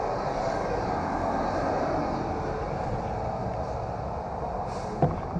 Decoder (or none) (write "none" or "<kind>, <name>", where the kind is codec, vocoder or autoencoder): none